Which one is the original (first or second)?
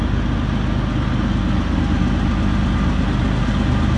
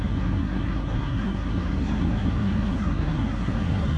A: first